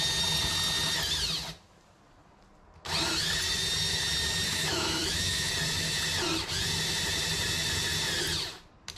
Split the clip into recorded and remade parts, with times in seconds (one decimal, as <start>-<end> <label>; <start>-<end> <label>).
0.0-4.5 recorded; 4.5-5.5 remade; 5.5-9.0 recorded